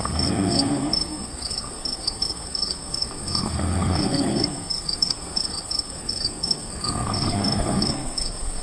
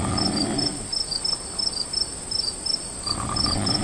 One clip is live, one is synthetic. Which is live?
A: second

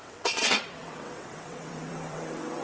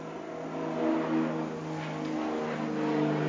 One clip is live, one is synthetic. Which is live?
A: second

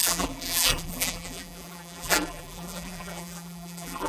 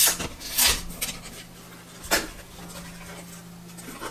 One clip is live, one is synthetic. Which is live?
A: second